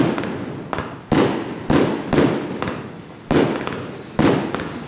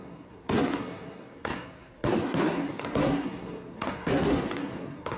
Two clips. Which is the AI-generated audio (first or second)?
second